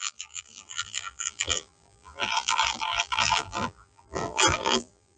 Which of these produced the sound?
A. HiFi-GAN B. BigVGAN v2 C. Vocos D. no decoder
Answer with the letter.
B